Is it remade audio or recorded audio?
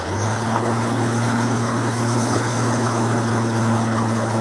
remade